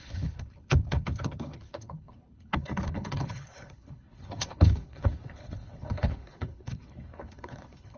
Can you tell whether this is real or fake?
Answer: fake